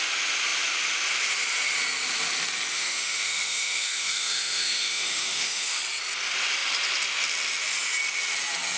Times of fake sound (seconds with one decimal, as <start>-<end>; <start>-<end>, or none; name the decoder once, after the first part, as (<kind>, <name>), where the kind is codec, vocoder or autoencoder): 2.7-5.8 (autoencoder, DAC-VAE)